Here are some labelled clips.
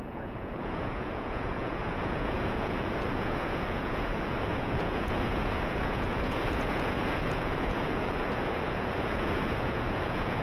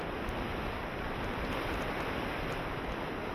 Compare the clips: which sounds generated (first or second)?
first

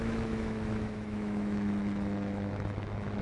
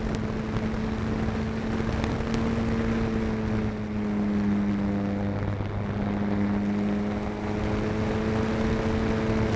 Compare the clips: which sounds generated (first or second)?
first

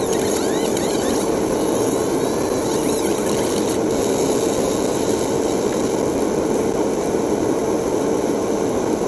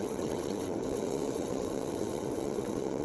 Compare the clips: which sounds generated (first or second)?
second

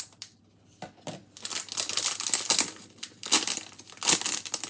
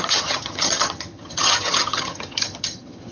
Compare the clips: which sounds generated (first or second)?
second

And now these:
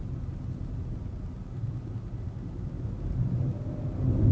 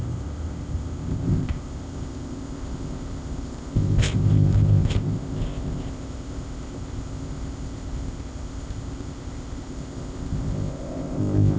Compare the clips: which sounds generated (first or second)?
second